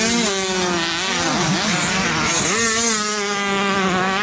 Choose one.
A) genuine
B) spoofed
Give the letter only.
A